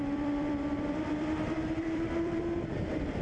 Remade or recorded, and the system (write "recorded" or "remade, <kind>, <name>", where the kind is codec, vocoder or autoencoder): remade, vocoder, BigVGAN v2